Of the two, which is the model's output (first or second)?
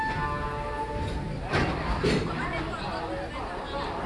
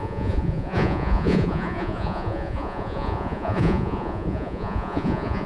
second